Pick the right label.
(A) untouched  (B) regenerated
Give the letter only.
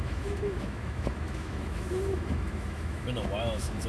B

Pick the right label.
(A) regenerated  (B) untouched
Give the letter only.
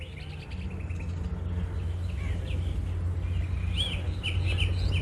B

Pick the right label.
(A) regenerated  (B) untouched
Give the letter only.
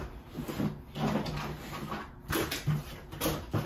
B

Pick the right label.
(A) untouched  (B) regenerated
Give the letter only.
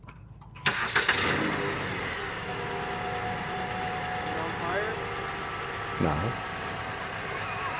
A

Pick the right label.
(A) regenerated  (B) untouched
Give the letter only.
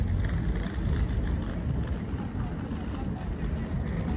B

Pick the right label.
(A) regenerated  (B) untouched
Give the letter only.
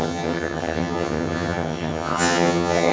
A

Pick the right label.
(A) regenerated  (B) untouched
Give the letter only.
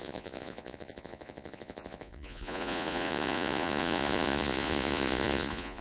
A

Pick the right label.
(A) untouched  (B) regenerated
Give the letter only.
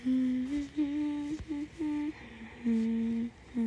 A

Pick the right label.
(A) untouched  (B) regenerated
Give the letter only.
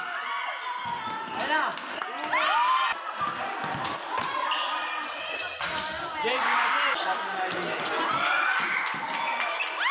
A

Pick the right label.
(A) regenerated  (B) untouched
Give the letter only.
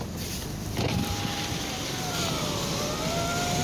A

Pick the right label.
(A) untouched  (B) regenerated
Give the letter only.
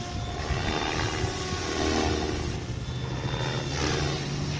A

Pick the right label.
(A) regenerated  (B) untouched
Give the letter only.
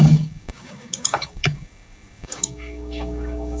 A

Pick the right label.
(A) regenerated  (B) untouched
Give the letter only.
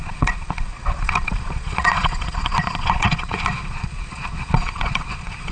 A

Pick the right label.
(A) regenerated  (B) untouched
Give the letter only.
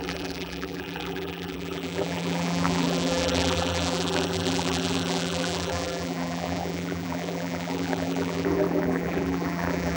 A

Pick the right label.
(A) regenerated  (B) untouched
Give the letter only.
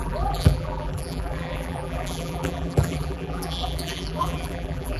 A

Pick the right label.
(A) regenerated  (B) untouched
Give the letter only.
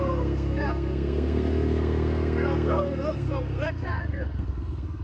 A